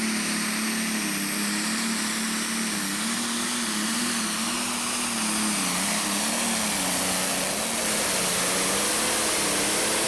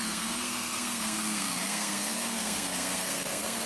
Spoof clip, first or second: second